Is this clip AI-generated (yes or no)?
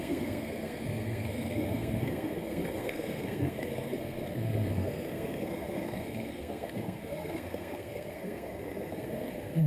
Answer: yes